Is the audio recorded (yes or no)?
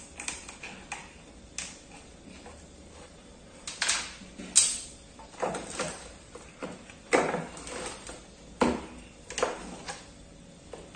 yes